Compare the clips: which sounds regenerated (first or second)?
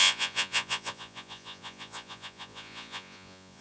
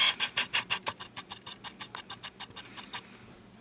first